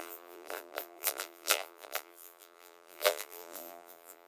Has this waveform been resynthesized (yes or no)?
yes